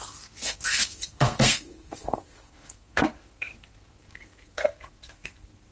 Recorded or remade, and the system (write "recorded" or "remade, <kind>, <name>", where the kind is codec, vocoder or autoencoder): remade, codec, SNAC